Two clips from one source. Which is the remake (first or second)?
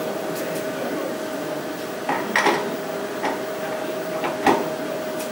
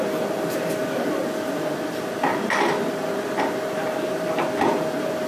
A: second